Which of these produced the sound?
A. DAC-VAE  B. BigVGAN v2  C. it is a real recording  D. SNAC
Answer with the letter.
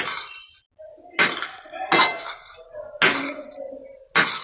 C